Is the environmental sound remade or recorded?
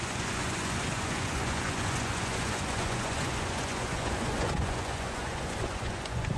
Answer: remade